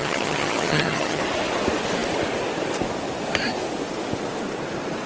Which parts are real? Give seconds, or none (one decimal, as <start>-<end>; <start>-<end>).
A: 1.2-5.1